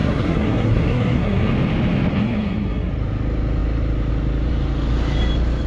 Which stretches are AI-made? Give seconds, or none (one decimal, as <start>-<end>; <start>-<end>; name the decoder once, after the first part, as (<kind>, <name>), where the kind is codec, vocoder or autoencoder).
0.0-1.5 (codec, SNAC); 2.1-2.9

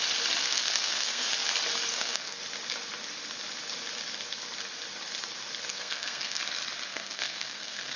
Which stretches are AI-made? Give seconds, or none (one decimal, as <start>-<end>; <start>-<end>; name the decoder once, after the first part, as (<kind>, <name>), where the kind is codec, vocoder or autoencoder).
0.4-1.3 (codec, SNAC); 1.9-2.4; 5.7-6.4; 6.9-8.0

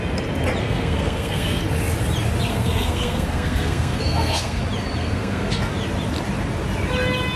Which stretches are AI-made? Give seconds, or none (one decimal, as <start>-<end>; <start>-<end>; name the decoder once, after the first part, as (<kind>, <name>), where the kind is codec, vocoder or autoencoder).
0.6-1.6 (codec, SNAC); 2.5-4.6; 5.0-5.7

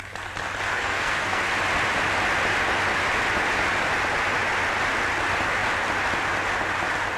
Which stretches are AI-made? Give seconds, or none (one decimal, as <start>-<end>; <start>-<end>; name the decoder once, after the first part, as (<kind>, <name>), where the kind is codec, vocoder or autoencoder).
0.7-1.4 (codec, SNAC)

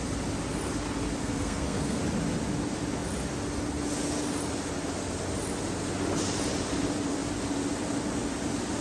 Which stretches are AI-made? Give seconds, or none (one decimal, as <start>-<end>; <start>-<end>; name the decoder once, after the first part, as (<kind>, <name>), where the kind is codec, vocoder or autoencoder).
1.2-2.0 (codec, SNAC)

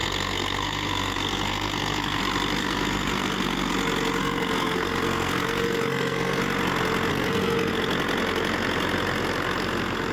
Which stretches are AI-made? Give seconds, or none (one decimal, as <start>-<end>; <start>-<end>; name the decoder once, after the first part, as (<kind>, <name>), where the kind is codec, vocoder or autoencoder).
0.0-2.2 (codec, SNAC); 2.6-3.7; 4.2-6.4; 7.1-7.7

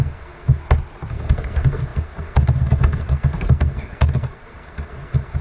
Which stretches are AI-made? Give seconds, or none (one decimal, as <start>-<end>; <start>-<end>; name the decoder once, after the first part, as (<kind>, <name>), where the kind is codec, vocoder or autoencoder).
0.0-0.6 (codec, SNAC); 1.1-5.4

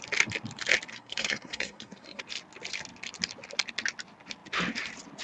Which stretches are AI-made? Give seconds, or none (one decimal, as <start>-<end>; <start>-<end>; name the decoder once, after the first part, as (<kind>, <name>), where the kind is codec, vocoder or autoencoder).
0.9-2.2 (codec, SNAC)